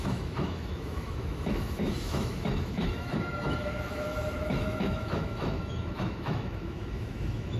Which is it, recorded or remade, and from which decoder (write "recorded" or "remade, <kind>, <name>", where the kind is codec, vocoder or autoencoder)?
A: remade, autoencoder, DAC-VAE